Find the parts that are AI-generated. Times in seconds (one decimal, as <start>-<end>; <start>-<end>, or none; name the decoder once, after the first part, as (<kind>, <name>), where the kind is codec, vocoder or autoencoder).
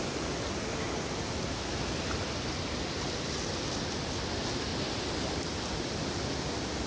4.7-5.4 (vocoder, BigVGAN v2)